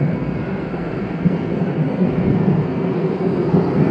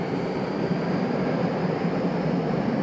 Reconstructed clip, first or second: first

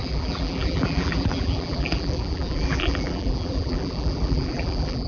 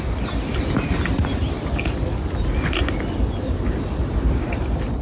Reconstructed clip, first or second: first